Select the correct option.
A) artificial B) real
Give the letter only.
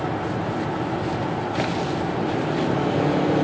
B